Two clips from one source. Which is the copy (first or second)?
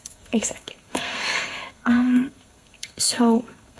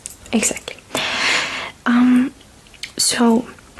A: first